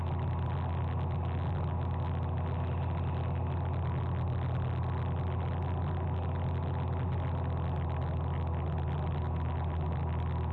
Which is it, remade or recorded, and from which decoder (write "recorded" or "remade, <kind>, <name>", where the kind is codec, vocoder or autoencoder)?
recorded